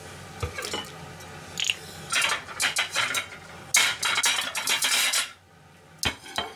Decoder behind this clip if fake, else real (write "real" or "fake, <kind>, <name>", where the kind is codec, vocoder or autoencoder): real